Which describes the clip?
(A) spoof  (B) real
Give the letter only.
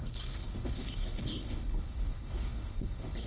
A